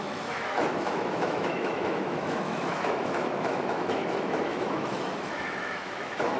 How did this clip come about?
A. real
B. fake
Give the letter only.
B